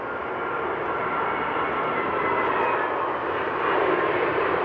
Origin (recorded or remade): recorded